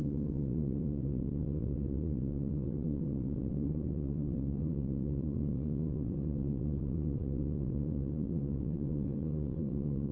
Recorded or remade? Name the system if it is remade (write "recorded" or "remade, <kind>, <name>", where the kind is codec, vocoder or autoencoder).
remade, vocoder, WaveNeXt